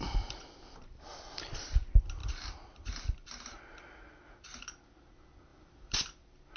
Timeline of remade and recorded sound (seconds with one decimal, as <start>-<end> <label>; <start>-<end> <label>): 0.0-1.1 recorded; 1.1-1.6 remade; 1.6-2.2 recorded; 2.2-3.6 remade; 3.6-5.5 recorded; 5.5-6.0 remade; 6.0-6.6 recorded